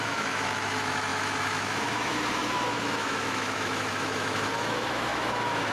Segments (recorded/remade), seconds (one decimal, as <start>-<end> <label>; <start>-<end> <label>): 0.0-5.7 remade